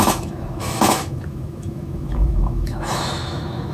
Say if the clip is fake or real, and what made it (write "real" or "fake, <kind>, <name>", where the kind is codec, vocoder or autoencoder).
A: fake, autoencoder, DAC-VAE